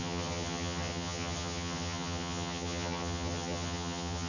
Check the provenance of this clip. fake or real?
fake